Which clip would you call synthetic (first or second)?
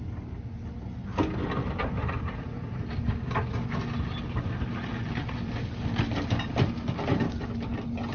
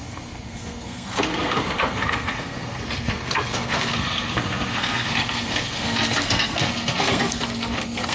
second